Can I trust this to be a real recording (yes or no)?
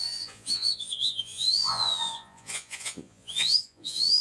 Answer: no